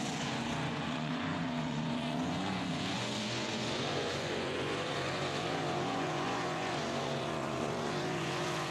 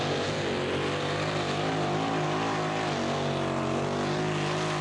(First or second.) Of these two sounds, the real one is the second